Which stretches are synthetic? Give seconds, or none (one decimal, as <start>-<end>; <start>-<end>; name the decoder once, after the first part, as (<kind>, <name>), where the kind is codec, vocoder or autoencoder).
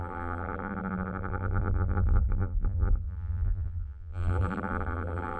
0.0-5.4 (vocoder, BigVGAN v2)